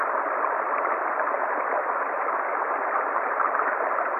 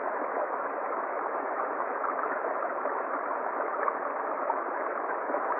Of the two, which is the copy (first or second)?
second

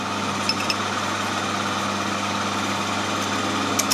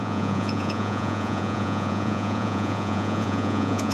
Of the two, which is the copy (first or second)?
second